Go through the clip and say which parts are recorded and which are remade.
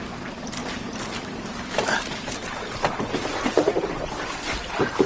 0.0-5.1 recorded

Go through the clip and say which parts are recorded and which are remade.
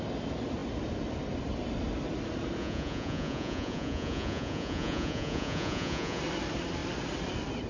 0.0-2.6 recorded; 2.6-6.2 remade; 6.2-7.7 recorded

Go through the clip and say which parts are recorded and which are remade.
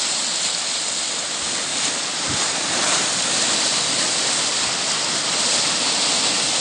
0.0-6.6 recorded